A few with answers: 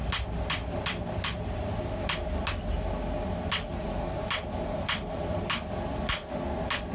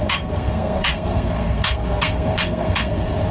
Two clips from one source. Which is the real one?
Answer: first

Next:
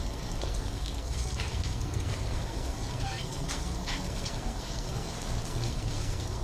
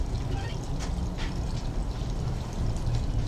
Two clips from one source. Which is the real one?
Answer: second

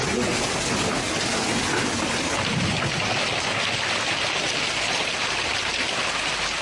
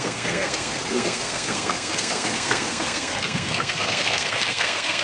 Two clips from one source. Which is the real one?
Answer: first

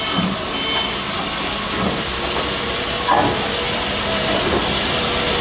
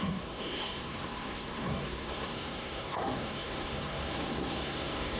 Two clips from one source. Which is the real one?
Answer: first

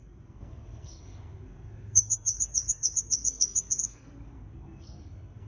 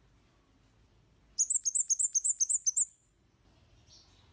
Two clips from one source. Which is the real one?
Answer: second